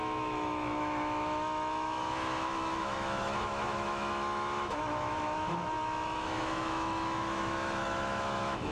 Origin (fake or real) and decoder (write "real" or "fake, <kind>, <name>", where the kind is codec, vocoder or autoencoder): fake, autoencoder, DAC-VAE